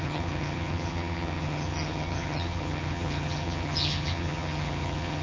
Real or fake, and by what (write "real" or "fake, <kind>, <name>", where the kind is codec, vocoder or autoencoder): fake, vocoder, HiFi-GAN